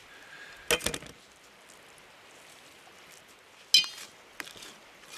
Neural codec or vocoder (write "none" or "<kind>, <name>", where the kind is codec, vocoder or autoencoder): none